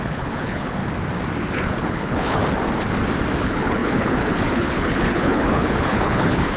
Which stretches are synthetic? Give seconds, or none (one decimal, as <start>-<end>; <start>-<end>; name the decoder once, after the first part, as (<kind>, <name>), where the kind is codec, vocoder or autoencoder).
0.0-0.8 (codec, HILCodec); 1.5-2.4; 3.4-6.6